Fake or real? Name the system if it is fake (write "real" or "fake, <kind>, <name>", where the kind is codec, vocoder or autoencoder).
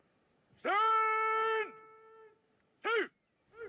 real